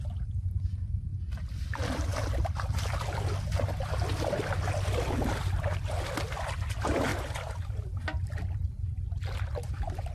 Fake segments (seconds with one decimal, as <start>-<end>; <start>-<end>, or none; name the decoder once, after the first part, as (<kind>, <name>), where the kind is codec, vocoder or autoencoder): none